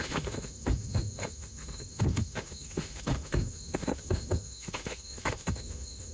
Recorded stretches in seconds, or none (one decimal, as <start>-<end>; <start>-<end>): none